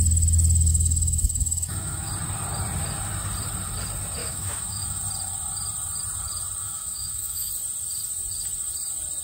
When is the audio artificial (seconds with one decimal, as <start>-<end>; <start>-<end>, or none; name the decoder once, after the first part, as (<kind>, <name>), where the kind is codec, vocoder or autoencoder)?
0.7-2.1 (autoencoder, DAC-VAE); 4.2-5.0; 6.6-7.5